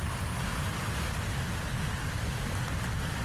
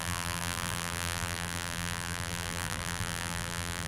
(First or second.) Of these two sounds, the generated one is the second